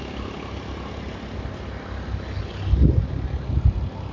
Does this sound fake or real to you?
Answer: real